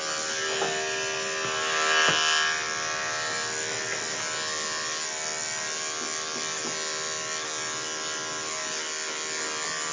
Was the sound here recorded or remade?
recorded